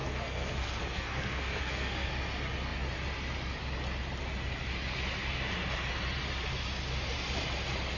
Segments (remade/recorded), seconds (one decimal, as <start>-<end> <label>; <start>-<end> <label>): 0.0-2.1 remade; 2.1-8.0 recorded